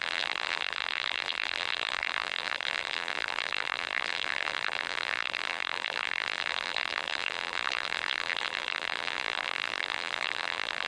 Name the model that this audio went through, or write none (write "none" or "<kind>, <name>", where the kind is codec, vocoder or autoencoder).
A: vocoder, BigVGAN v2